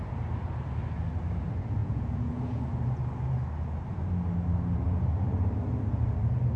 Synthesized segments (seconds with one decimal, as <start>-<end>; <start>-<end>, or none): 1.8-2.6